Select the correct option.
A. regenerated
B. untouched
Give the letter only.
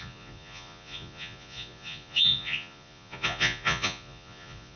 A